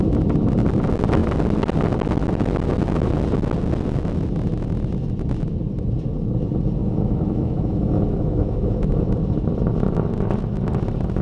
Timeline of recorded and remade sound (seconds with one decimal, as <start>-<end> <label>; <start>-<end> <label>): 0.0-6.8 recorded; 6.8-9.1 remade; 9.1-11.2 recorded